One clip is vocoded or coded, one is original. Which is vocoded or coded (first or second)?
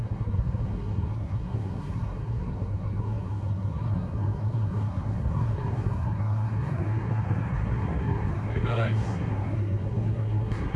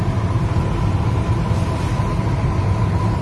first